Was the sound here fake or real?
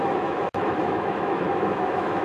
fake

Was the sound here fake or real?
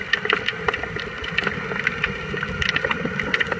real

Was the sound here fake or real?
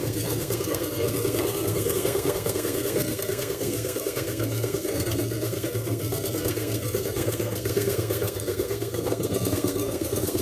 fake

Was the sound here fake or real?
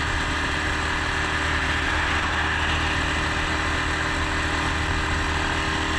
real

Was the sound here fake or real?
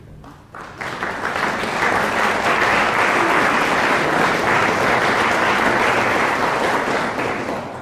real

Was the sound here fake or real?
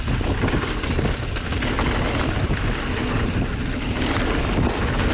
real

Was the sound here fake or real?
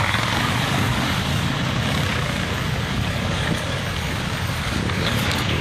fake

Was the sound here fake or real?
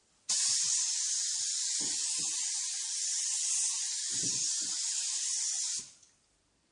real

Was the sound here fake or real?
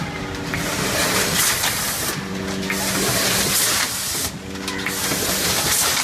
real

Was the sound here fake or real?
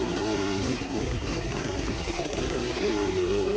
fake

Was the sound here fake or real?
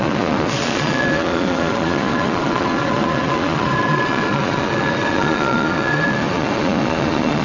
fake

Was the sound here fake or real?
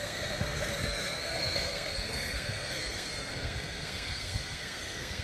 fake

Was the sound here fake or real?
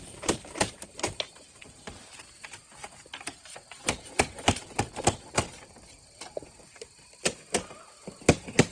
fake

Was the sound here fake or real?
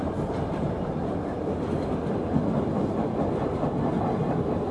real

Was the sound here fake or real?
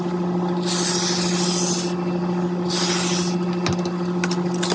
real